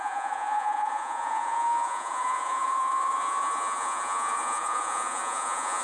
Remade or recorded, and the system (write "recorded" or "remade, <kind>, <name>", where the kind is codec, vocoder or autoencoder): remade, vocoder, Vocos